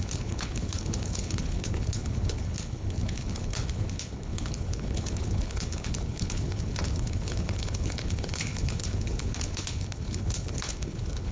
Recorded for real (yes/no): no